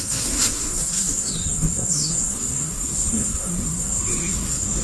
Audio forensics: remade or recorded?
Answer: remade